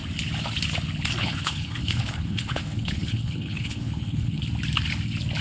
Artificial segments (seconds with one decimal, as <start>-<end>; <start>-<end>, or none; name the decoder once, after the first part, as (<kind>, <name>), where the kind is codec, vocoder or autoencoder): 1.2-4.4 (codec, HILCodec)